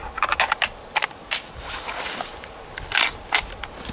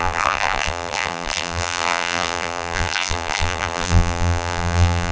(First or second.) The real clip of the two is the first